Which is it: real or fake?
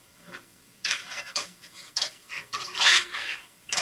fake